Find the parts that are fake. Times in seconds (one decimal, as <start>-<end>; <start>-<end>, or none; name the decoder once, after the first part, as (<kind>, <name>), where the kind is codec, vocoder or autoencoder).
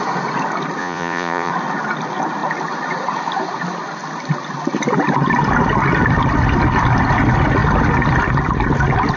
0.8-1.5 (vocoder, Vocos)